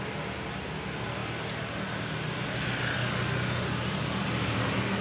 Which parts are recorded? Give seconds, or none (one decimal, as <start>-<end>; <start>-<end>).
0.0-5.0